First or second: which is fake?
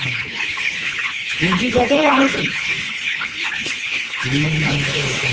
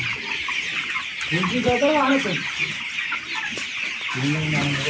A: first